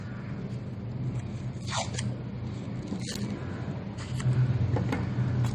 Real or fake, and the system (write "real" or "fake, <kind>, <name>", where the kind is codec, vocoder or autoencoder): real